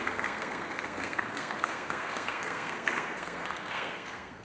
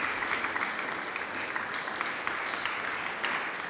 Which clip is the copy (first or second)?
first